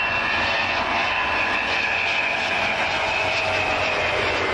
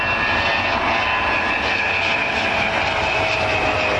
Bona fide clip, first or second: second